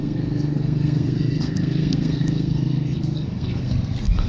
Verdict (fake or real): fake